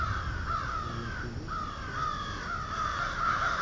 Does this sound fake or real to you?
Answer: real